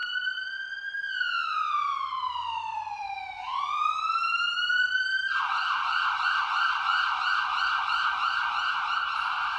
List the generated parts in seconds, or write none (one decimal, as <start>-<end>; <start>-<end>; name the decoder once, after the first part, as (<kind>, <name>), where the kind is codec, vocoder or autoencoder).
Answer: 4.8-6.9 (vocoder, BigVGAN v2); 8.0-9.6